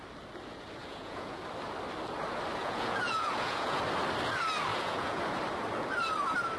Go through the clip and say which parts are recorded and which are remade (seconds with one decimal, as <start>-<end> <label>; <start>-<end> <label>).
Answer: 0.0-0.8 recorded; 0.8-1.4 remade; 1.4-2.6 recorded; 2.6-3.8 remade; 3.8-4.7 recorded; 4.7-5.2 remade; 5.2-6.6 recorded